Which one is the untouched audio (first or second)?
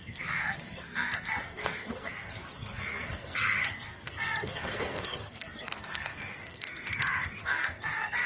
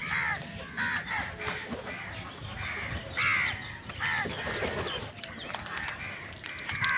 second